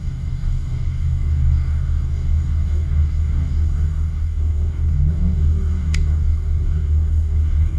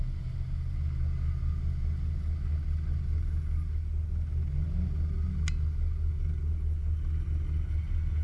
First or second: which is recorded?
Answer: second